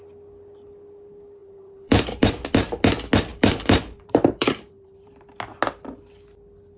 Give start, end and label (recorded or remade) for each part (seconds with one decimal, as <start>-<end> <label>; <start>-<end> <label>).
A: 0.0-1.4 recorded; 1.4-2.3 remade; 2.3-3.3 recorded; 3.3-5.1 remade; 5.1-6.8 recorded